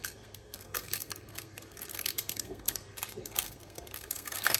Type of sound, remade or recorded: remade